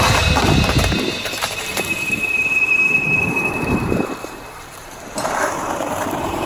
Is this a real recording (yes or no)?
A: no